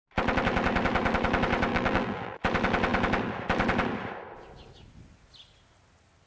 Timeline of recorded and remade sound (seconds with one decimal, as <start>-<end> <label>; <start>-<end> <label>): 0.0-1.7 recorded; 1.7-2.4 remade; 2.4-6.3 recorded